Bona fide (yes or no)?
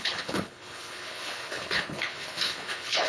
no